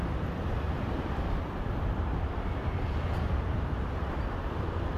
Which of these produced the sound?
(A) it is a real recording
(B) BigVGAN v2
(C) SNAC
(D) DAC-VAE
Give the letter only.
A